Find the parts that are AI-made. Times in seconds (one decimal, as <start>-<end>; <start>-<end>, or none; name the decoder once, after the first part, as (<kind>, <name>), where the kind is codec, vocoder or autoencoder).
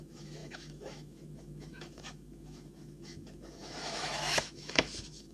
0.0-5.3 (autoencoder, DAC-VAE)